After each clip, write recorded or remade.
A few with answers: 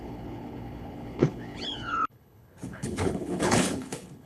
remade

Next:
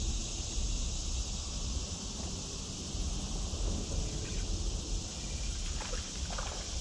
recorded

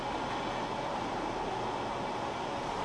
recorded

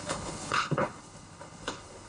remade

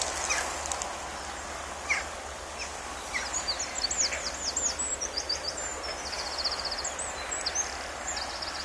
recorded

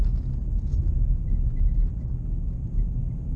recorded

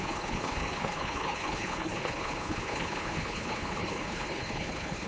remade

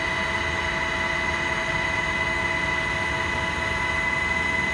recorded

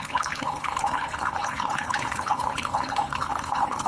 remade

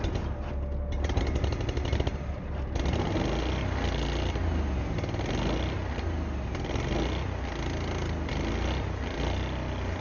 recorded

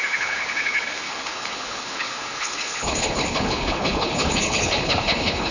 remade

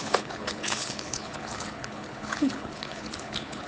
remade